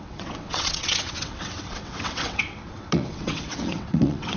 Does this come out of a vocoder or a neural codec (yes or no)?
yes